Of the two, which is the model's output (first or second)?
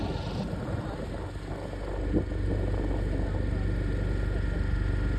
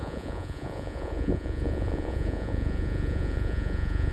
second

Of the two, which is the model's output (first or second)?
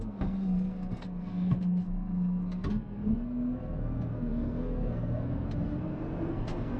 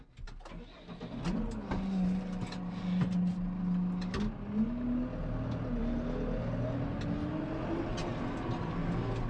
first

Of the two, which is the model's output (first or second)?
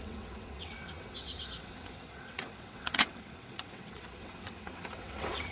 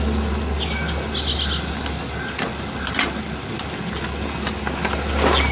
first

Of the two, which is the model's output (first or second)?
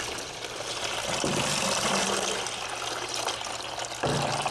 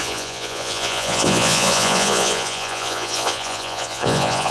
second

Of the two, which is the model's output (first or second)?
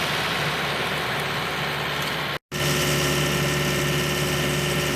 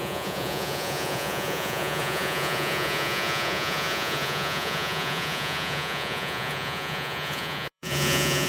second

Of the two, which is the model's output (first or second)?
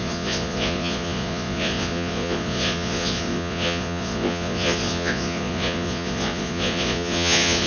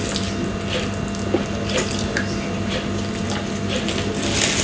first